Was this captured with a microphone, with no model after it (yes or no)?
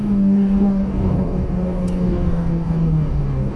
no